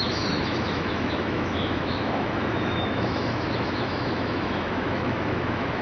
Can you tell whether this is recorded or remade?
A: remade